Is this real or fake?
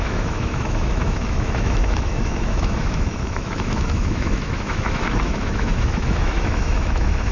fake